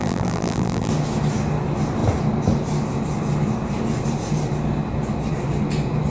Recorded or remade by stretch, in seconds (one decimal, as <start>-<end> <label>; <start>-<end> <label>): 0.0-0.9 remade; 0.9-6.1 recorded